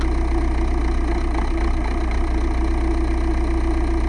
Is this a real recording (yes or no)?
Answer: yes